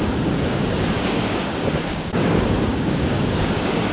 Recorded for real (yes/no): no